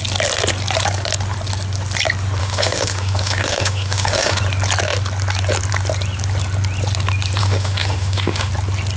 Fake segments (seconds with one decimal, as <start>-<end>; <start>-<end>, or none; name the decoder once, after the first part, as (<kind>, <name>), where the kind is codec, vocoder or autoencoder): 2.4-4.4 (autoencoder, DAC-VAE); 7.4-8.5